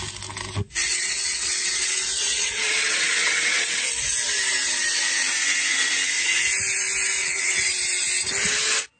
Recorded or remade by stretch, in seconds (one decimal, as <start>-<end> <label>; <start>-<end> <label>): 0.0-0.9 recorded; 0.9-3.8 remade; 3.8-7.2 recorded; 7.2-7.7 remade; 7.7-9.0 recorded